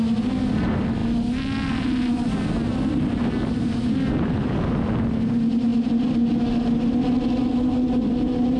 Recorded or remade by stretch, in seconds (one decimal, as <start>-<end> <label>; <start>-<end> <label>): 0.0-8.6 recorded